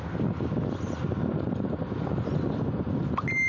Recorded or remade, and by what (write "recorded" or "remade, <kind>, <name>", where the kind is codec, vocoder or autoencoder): recorded